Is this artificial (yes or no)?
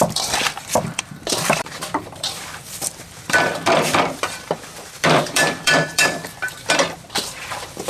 yes